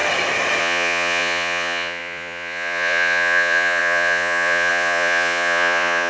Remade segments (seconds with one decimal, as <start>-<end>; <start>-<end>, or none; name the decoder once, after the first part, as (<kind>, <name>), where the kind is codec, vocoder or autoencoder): 0.6-6.1 (vocoder, Vocos)